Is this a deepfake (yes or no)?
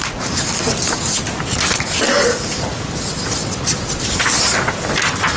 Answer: no